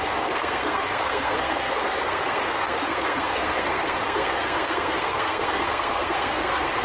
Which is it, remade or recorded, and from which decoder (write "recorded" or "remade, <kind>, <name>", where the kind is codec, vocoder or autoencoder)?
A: remade, codec, SNAC